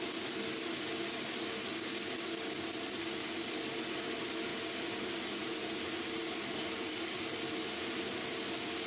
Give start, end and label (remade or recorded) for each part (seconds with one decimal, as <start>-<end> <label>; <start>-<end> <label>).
0.0-8.9 recorded